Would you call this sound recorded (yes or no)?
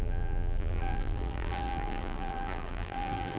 no